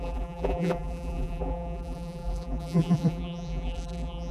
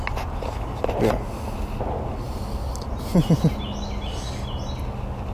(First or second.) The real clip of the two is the second